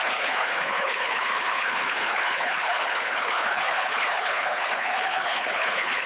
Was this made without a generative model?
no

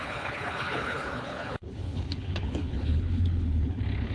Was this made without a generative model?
no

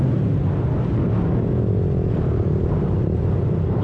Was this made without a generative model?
yes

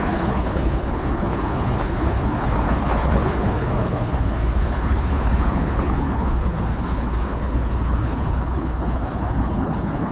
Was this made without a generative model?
no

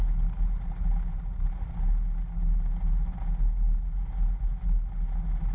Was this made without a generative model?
yes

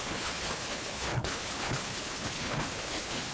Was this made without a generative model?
no